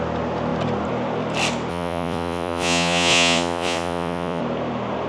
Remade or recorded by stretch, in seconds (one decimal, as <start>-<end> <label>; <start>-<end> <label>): 0.0-1.7 recorded; 1.7-4.4 remade; 4.4-5.1 recorded

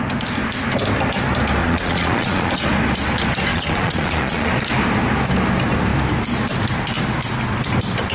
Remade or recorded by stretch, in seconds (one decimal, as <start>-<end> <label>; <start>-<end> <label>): 0.0-1.6 recorded; 1.6-2.5 remade; 2.5-3.5 recorded; 3.5-4.5 remade; 4.5-8.1 recorded